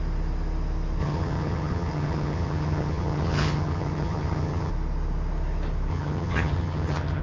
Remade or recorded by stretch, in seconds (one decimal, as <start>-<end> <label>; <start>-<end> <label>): 0.0-1.0 recorded; 1.0-4.7 remade; 4.7-5.9 recorded; 5.9-7.2 remade